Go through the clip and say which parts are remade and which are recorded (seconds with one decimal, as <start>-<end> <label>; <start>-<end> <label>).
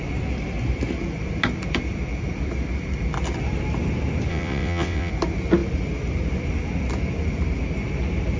0.0-4.3 recorded; 4.3-5.1 remade; 5.1-8.4 recorded